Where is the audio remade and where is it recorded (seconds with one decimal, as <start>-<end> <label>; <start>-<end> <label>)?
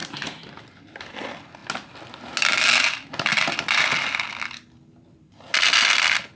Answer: 0.0-6.4 recorded